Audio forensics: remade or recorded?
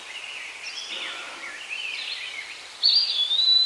remade